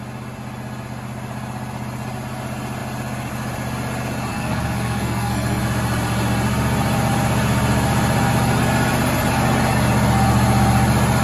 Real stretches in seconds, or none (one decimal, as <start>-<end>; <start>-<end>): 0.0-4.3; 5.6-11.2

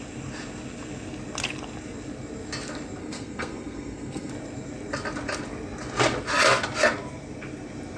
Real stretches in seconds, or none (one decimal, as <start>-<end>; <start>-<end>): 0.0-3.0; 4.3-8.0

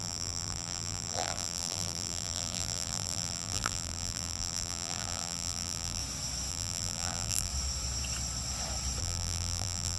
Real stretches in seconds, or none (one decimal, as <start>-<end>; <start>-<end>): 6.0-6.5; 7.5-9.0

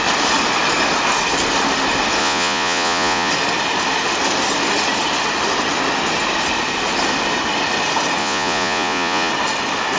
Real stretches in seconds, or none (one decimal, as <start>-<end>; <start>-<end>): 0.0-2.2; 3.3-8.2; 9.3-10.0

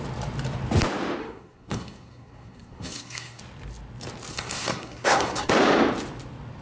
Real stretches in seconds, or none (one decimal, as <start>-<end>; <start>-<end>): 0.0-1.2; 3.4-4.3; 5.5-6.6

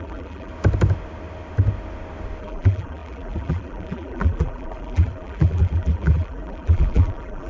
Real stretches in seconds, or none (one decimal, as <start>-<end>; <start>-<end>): 0.5-2.4

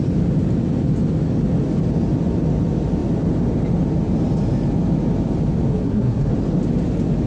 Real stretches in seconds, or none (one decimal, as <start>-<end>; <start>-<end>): 0.0-5.7; 6.3-7.3